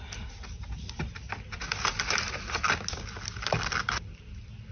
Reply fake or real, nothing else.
real